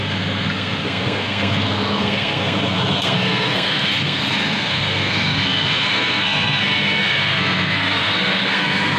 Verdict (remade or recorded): remade